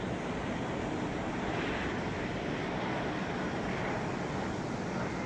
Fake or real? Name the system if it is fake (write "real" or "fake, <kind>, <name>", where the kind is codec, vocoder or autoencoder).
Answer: real